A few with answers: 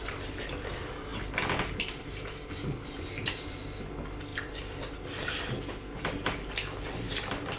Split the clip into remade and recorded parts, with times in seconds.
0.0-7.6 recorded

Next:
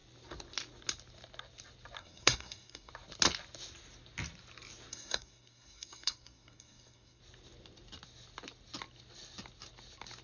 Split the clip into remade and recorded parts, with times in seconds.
0.0-2.0 recorded; 2.0-2.9 remade; 2.9-4.9 recorded; 4.9-7.2 remade; 7.2-10.2 recorded